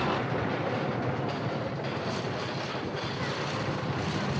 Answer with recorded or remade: recorded